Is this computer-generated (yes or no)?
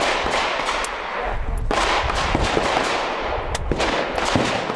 no